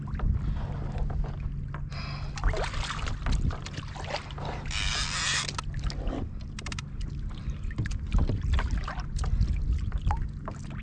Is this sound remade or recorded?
recorded